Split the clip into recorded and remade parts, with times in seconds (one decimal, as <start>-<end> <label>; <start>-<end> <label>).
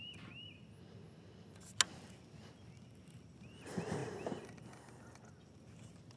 0.0-6.2 recorded